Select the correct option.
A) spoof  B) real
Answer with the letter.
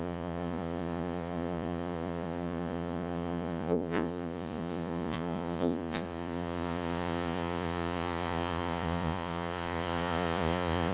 A